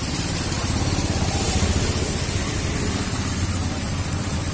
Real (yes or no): no